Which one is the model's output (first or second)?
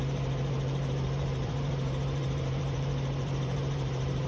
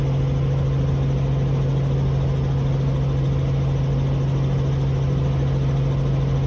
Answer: first